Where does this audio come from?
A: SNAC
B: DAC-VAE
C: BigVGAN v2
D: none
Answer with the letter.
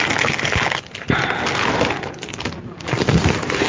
D